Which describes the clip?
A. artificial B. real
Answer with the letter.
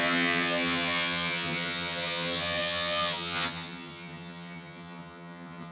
A